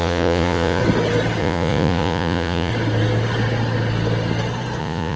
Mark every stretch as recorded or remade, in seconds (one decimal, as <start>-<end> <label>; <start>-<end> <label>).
0.0-0.8 remade; 0.8-1.4 recorded; 1.4-2.7 remade; 2.7-4.8 recorded; 4.8-5.2 remade